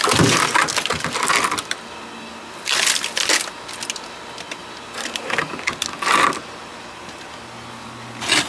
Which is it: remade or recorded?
recorded